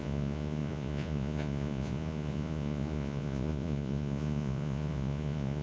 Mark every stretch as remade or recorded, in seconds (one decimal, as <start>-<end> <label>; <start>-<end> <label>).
0.0-5.6 remade